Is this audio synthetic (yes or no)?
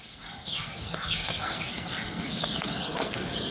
yes